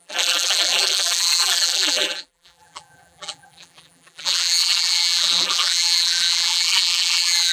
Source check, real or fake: fake